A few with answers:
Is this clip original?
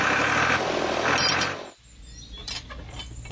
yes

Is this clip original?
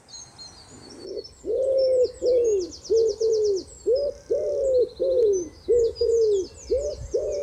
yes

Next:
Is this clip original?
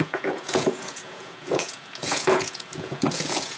no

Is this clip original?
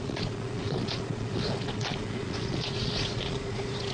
no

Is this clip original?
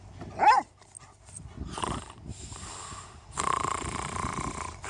yes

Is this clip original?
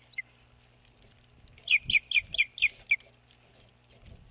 yes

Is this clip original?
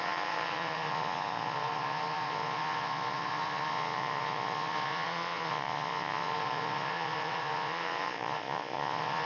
no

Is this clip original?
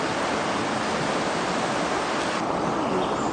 yes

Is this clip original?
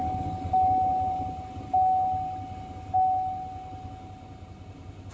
yes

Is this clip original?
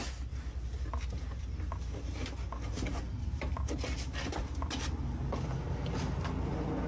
yes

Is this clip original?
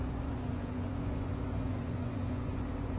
no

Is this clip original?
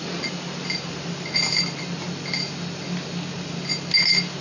yes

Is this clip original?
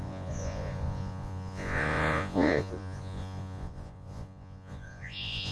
no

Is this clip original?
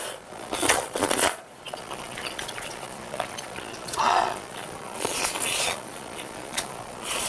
no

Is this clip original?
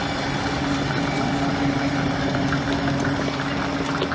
yes